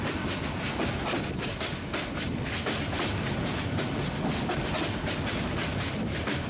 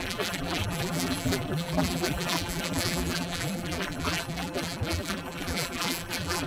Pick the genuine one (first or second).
first